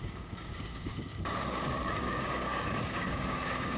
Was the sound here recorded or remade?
remade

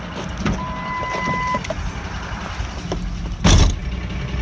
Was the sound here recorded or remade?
recorded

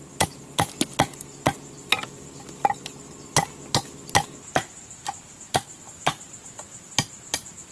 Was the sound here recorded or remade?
recorded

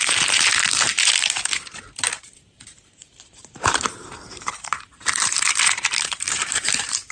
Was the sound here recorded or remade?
remade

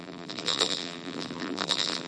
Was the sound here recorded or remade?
remade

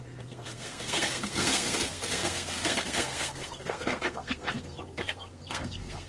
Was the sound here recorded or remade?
remade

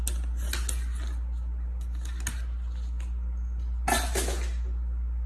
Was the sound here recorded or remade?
recorded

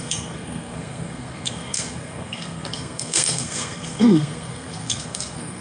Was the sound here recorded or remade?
remade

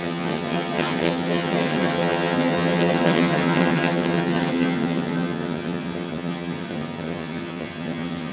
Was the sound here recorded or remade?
remade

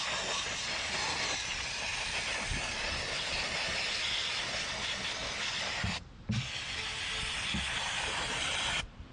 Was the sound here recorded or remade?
recorded